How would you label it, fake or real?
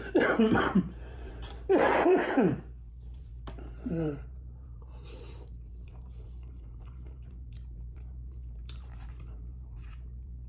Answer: fake